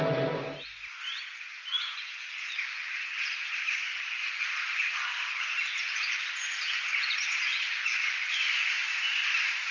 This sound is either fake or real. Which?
real